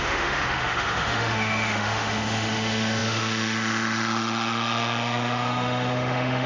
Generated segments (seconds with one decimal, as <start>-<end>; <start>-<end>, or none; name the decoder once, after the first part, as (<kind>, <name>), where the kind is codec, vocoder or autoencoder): 0.0-6.5 (autoencoder, DAC-VAE)